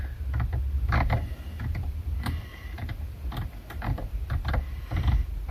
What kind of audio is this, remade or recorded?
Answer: remade